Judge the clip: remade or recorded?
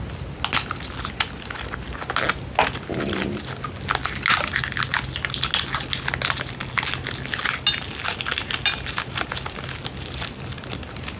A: recorded